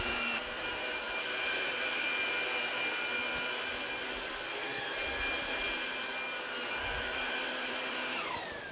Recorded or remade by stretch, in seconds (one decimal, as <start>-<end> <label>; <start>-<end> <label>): 0.0-2.1 remade; 2.1-4.1 recorded; 4.1-4.7 remade; 4.7-6.9 recorded; 6.9-8.7 remade